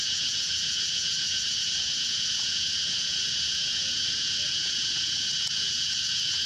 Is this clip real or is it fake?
fake